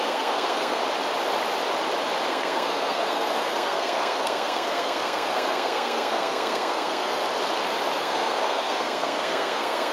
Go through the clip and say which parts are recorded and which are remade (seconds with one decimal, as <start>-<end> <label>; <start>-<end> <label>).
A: 0.0-0.8 remade; 0.8-2.3 recorded; 2.3-7.2 remade; 7.2-8.0 recorded; 8.0-9.9 remade